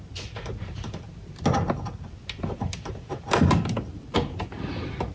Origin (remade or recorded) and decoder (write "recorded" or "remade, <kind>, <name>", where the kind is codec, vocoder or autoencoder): recorded